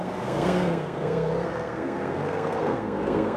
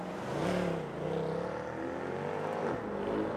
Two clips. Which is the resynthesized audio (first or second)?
first